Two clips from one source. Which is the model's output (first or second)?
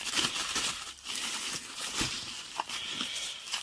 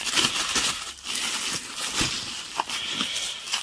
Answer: first